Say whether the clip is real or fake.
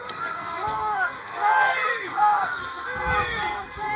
fake